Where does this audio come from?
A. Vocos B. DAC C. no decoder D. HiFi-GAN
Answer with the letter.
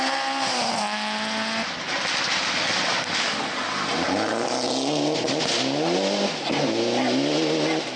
C